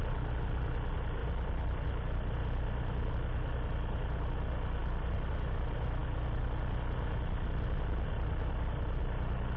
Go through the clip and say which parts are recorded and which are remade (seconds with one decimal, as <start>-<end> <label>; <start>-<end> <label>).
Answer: 0.0-9.6 recorded